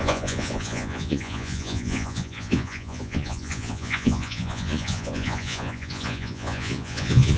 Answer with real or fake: fake